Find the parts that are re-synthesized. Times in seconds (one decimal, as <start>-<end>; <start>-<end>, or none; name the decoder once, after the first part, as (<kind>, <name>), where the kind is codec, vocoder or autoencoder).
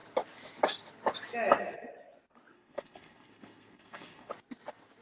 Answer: 2.5-4.3 (codec, SNAC)